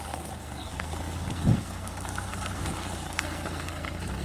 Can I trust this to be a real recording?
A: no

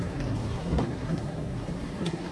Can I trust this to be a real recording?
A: no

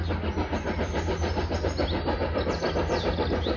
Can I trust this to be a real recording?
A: yes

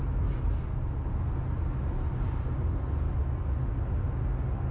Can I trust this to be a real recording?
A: yes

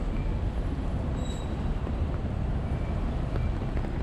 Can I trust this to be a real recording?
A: no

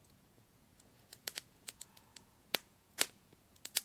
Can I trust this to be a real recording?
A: no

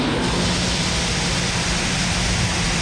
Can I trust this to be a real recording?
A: yes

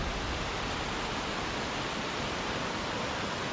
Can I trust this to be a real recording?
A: yes